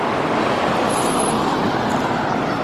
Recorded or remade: recorded